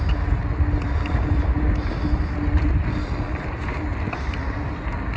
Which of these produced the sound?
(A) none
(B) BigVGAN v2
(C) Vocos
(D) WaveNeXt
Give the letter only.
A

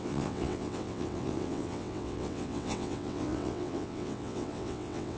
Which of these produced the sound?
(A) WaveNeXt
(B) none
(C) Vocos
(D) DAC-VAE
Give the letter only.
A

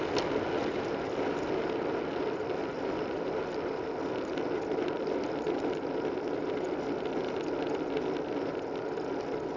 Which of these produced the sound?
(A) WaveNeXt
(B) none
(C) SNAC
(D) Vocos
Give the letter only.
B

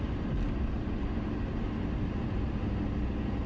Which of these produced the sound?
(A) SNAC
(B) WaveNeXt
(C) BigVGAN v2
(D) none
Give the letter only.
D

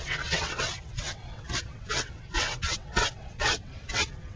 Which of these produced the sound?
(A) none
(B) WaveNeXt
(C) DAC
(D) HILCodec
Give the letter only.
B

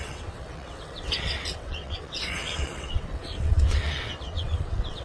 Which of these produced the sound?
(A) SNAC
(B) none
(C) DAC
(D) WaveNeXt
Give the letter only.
D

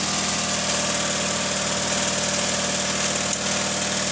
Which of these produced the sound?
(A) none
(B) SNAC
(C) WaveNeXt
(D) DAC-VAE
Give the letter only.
A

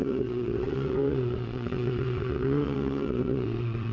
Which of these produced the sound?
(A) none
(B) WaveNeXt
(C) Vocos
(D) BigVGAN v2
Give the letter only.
B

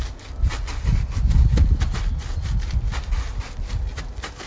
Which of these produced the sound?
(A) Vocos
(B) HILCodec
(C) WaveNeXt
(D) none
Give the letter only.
D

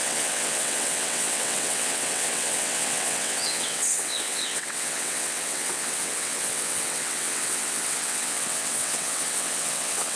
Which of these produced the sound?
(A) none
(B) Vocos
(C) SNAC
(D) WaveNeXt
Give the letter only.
D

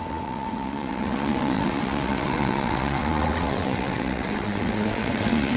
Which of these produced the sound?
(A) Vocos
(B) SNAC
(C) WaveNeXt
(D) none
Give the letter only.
C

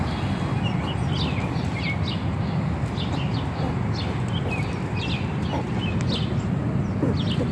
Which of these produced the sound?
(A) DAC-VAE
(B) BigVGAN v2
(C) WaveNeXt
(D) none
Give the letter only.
D